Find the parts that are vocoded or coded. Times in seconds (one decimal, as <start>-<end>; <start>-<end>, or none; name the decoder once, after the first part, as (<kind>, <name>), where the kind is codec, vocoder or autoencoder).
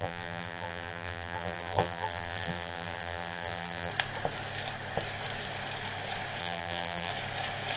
0.0-3.9 (vocoder, BigVGAN v2); 6.4-7.1